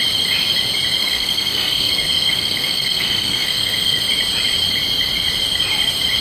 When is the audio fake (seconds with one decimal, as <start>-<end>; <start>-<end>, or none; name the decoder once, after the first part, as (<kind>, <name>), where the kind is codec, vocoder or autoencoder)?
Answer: 1.0-4.0 (codec, SNAC)

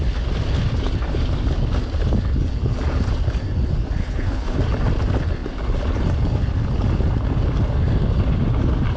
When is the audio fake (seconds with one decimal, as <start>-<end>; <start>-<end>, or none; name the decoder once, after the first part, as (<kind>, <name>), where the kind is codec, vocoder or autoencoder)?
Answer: 4.0-4.6 (codec, HILCodec)

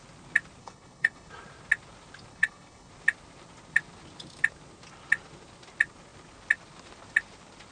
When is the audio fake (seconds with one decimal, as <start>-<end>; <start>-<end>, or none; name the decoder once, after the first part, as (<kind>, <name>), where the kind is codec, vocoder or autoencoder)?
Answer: 0.6-1.3 (codec, HILCodec); 2.3-2.9